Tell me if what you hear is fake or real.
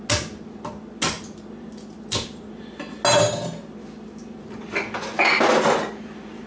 real